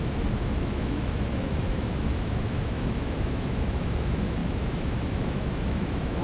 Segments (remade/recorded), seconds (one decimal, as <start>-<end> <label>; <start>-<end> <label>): 0.0-6.2 remade